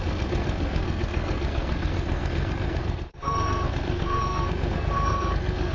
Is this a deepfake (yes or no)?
yes